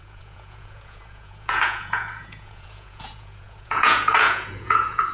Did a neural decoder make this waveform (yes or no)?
yes